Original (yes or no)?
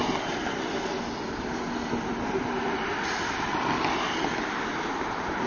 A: yes